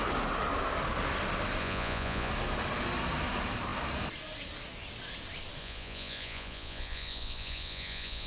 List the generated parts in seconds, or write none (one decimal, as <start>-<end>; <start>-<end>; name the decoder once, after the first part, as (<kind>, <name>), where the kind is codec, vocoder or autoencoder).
1.6-2.3 (vocoder, Vocos); 5.6-8.3